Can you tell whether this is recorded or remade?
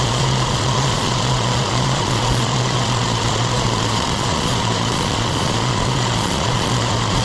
remade